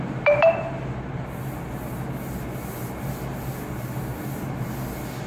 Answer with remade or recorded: recorded